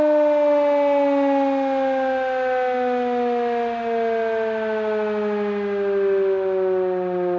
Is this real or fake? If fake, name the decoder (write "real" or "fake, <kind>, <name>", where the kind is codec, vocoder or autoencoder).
real